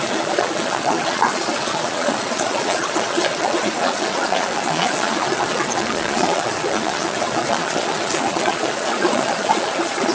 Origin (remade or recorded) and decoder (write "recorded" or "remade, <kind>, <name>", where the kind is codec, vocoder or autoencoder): remade, vocoder, Vocos